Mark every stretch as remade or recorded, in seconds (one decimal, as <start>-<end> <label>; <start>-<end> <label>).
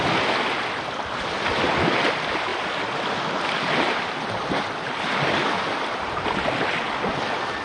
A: 0.0-7.6 recorded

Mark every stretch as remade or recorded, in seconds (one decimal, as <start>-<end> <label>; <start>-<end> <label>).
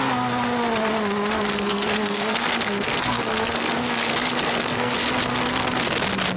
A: 0.0-1.5 recorded; 1.5-5.2 remade; 5.2-6.4 recorded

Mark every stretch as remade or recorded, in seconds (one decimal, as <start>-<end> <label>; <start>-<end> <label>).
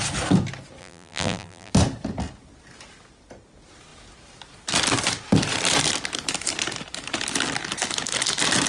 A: 0.0-0.8 recorded; 0.8-1.7 remade; 1.7-8.7 recorded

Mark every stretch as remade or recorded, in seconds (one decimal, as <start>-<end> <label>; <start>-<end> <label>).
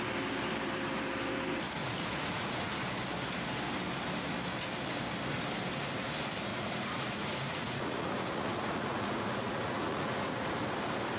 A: 0.0-1.8 recorded; 1.8-2.8 remade; 2.8-6.5 recorded; 6.5-10.5 remade; 10.5-11.2 recorded